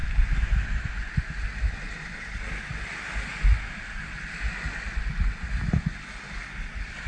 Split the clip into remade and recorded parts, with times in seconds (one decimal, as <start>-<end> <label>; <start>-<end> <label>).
0.0-7.1 recorded